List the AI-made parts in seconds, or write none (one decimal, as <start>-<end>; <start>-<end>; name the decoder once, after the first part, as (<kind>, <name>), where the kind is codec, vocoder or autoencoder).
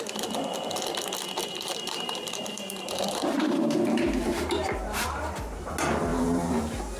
1.4-5.6 (vocoder, BigVGAN v2); 6.1-7.0